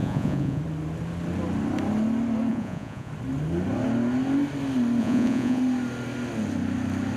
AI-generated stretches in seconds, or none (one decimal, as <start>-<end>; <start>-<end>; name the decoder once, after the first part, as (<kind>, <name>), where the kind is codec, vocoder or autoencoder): 0.0-0.6 (vocoder, Vocos); 2.5-3.1; 5.0-5.6